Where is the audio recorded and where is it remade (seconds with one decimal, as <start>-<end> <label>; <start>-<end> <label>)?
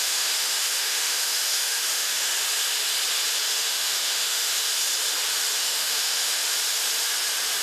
0.0-2.3 remade; 2.3-3.5 recorded; 3.5-4.7 remade; 4.7-5.6 recorded; 5.6-6.4 remade; 6.4-7.6 recorded